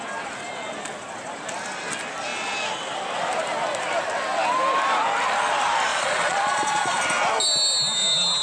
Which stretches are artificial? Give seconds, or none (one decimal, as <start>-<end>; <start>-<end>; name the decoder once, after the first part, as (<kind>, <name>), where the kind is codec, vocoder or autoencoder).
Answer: 5.9-7.0 (vocoder, Vocos)